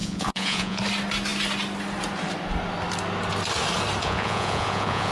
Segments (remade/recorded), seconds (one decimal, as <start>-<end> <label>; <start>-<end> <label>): 0.0-0.8 remade; 0.8-4.0 recorded; 4.0-5.1 remade